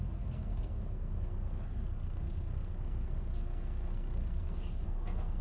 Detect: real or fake fake